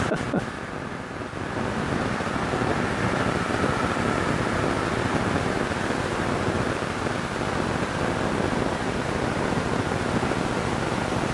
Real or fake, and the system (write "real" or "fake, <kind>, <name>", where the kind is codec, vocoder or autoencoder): real